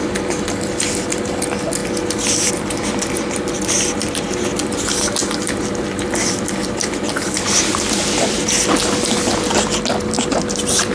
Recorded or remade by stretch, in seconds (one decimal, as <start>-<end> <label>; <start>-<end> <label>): 0.0-10.9 recorded